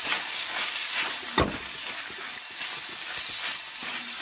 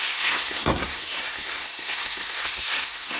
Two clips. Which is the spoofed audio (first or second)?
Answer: second